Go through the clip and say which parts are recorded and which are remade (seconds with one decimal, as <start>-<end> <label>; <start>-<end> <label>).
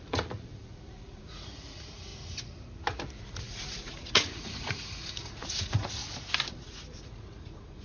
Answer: 0.0-2.1 remade; 2.1-3.4 recorded; 3.4-6.0 remade; 6.0-6.5 recorded; 6.5-7.8 remade